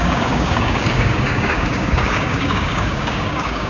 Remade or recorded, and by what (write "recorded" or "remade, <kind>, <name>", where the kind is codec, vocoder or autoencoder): remade, codec, DAC